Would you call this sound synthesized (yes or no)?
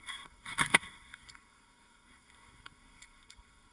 yes